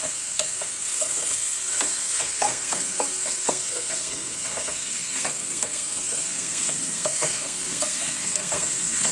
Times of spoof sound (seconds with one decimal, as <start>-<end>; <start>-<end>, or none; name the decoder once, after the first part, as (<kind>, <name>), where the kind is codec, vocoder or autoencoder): 0.0-9.1 (codec, SNAC)